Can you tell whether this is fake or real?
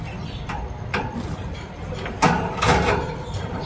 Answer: fake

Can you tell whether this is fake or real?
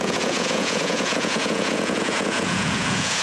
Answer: fake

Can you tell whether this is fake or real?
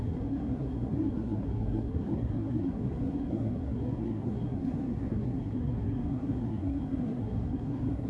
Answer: fake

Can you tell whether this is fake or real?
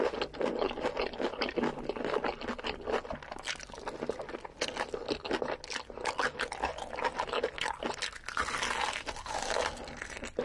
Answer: real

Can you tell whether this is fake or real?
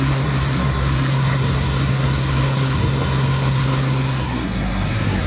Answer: fake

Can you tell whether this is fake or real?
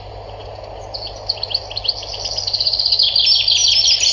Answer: real